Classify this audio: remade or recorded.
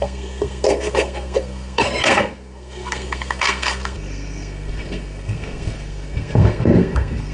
remade